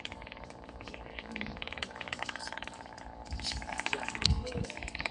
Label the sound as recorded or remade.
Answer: remade